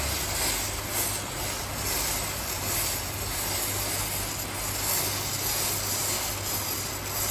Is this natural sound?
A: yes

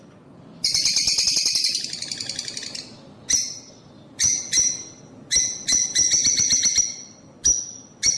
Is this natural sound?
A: yes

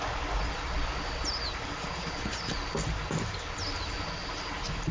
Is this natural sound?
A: yes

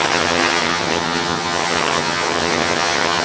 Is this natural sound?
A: no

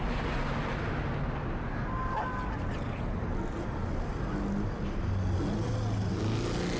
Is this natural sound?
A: yes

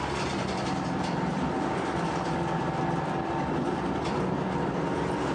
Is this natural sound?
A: no